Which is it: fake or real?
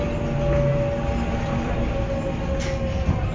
real